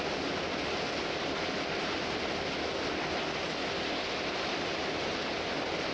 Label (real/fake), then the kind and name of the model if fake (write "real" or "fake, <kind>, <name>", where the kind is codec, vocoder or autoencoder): real